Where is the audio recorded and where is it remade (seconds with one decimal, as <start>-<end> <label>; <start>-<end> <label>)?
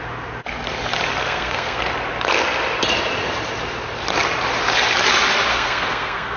0.0-1.2 recorded; 1.2-1.8 remade; 1.8-5.5 recorded; 5.5-6.4 remade